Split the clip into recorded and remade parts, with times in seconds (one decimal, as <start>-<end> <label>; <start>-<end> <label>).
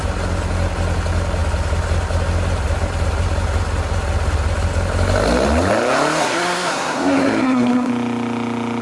0.0-6.2 recorded; 6.2-7.9 remade; 7.9-8.8 recorded